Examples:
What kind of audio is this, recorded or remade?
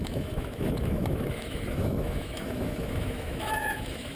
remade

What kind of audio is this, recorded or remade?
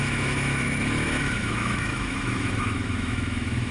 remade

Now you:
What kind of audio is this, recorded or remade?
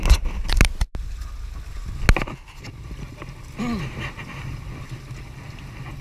recorded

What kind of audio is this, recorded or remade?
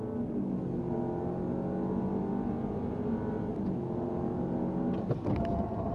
recorded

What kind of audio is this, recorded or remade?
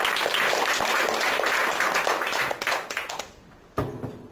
recorded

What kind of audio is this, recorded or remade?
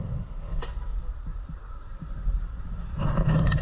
recorded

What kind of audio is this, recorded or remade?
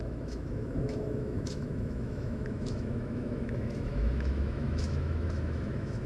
remade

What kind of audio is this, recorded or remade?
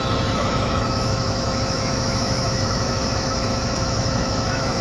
remade